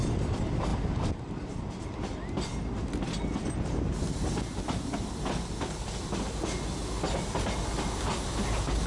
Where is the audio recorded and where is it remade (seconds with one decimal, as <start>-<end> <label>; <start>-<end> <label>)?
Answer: 0.0-8.9 recorded